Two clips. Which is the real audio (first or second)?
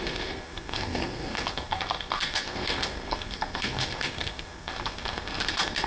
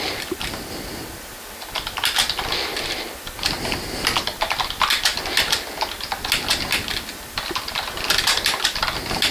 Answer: second